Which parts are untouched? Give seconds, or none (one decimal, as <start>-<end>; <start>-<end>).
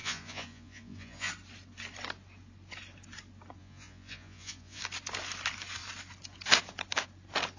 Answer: 1.3-3.6; 4.8-7.6